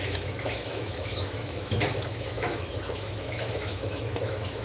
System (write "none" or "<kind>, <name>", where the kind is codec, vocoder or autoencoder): autoencoder, DAC-VAE